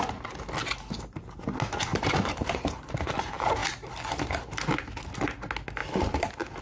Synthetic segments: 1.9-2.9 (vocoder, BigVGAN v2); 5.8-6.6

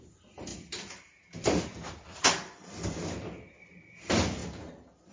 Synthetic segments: none

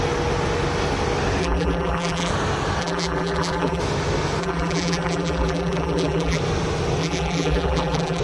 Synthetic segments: 1.4-2.3 (vocoder, BigVGAN v2); 2.8-3.8; 4.4-6.4; 7.0-8.2

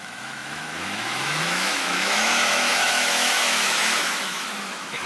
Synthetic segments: 0.0-5.1 (autoencoder, DAC-VAE)

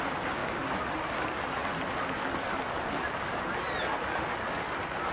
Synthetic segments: none

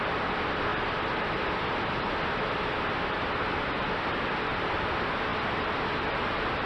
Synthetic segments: 0.0-0.7 (vocoder, BigVGAN v2); 4.0-6.7

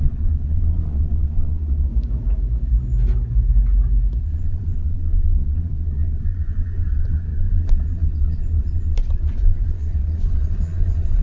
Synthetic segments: 0.0-1.9 (vocoder, Vocos); 4.2-11.2